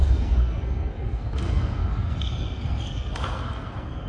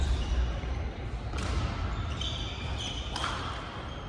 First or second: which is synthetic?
first